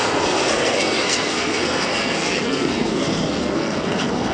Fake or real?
fake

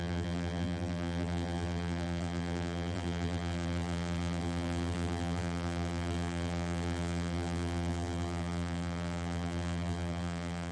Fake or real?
fake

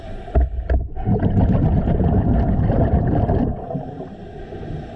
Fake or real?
fake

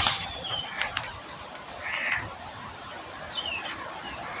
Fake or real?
fake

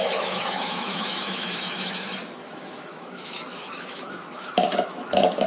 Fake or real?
fake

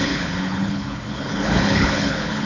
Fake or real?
fake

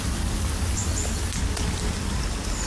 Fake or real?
real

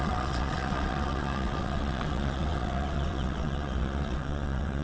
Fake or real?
fake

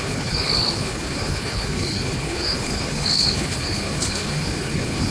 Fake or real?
fake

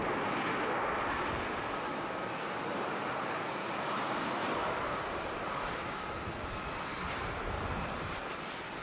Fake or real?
real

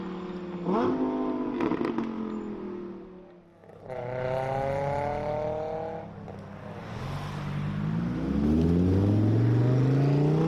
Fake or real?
real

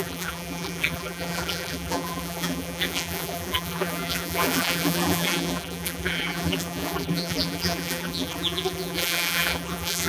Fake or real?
fake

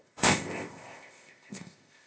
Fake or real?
fake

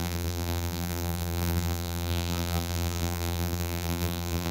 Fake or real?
fake